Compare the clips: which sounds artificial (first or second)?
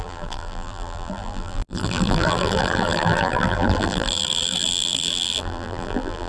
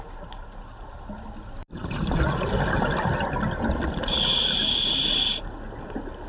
first